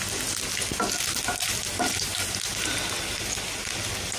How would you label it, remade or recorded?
recorded